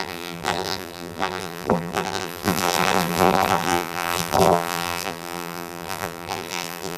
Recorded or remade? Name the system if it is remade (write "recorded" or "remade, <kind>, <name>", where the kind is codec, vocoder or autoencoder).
remade, vocoder, BigVGAN v2